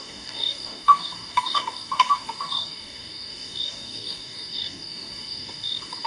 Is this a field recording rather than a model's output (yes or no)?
no